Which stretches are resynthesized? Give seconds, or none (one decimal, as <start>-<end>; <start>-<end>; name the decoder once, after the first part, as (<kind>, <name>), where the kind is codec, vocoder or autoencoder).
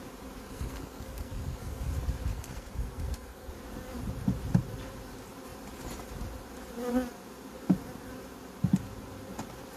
0.5-1.9 (codec, SNAC); 2.3-3.5